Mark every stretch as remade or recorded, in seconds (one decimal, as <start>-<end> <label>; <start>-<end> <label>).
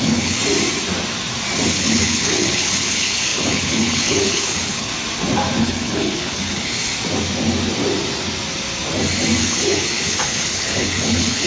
0.0-0.4 remade; 0.4-1.7 recorded; 1.7-4.9 remade; 4.9-5.6 recorded; 5.6-6.9 remade; 6.9-9.4 recorded; 9.4-11.5 remade